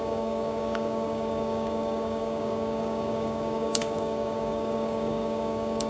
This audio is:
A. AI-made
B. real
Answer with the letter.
A